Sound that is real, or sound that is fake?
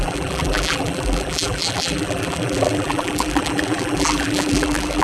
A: fake